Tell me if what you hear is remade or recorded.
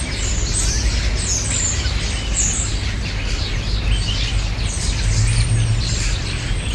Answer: recorded